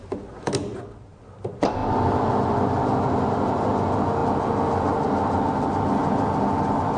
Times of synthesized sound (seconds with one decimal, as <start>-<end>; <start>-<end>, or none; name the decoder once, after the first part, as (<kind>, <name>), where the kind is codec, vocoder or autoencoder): none